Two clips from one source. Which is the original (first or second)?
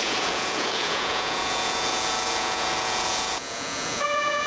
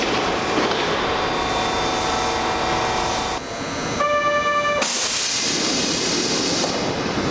second